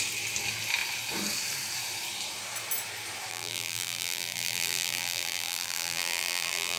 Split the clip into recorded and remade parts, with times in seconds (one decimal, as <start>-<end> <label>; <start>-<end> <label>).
0.0-3.3 recorded; 3.3-6.8 remade